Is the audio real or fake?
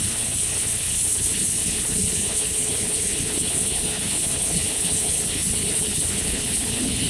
fake